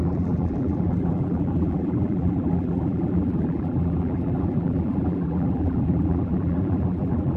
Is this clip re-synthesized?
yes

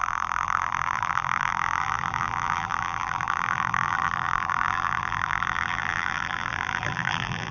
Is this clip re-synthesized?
yes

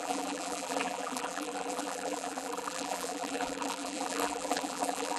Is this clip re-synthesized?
yes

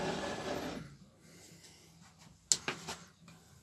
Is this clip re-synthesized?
no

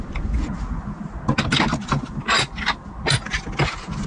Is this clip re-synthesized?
no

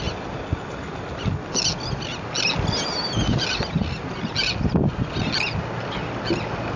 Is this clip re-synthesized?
no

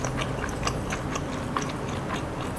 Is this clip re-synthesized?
no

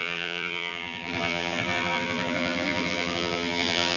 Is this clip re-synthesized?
yes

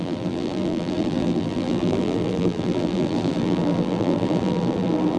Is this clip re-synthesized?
yes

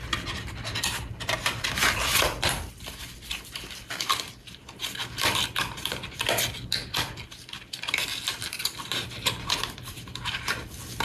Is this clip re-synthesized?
yes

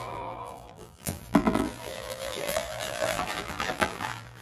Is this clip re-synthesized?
yes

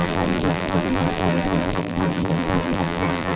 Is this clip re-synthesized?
yes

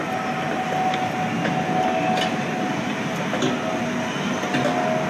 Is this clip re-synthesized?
no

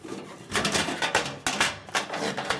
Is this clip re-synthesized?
no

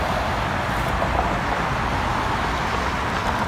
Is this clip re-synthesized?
no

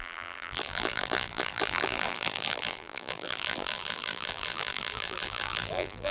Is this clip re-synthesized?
yes